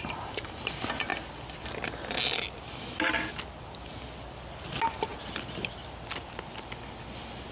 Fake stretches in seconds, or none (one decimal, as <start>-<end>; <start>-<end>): none